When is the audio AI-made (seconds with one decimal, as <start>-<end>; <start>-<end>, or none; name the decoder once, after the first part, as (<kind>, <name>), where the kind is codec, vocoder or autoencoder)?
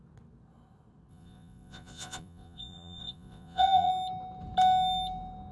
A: 1.1-3.9 (vocoder, Vocos)